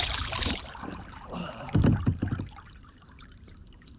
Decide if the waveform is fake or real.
fake